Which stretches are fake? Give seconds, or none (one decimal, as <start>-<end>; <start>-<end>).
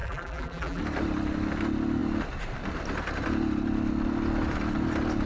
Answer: 0.0-0.8